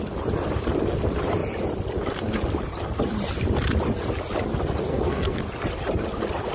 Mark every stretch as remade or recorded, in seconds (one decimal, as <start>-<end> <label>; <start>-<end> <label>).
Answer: 0.0-4.9 recorded; 4.9-5.4 remade; 5.4-6.5 recorded